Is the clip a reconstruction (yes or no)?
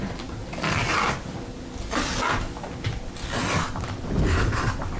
no